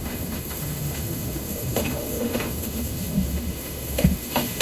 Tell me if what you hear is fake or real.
fake